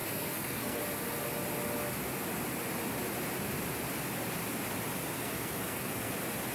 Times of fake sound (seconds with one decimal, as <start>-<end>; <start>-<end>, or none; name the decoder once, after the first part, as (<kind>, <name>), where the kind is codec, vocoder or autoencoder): 0.0-0.8 (codec, SNAC); 5.0-6.1